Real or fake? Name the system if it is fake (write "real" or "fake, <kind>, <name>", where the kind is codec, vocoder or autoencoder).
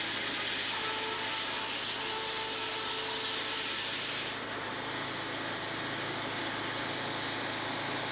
real